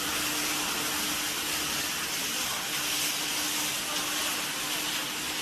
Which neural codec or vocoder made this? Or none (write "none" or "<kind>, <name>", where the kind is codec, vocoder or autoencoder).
none